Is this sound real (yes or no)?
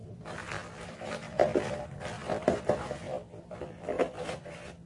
yes